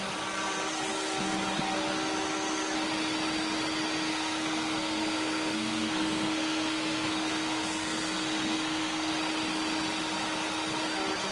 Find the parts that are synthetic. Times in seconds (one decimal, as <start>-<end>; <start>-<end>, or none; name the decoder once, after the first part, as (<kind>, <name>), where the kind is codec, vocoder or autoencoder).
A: 4.1-9.1 (codec, SNAC)